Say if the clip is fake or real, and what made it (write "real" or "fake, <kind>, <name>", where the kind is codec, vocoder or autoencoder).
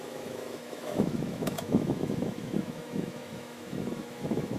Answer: fake, autoencoder, DAC-VAE